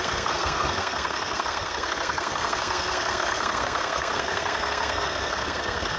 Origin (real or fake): fake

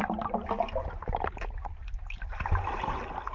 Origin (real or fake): real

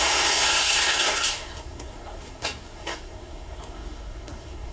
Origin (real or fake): fake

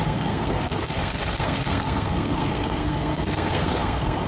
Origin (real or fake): fake